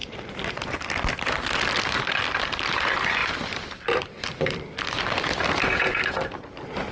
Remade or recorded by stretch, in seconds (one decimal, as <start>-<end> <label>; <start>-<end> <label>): 0.0-3.2 recorded; 3.2-6.1 remade; 6.1-6.9 recorded

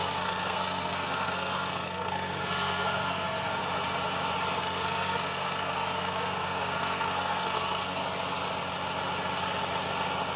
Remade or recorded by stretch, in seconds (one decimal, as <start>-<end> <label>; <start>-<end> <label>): 0.0-3.6 remade; 3.6-4.6 recorded; 4.6-8.0 remade; 8.0-10.4 recorded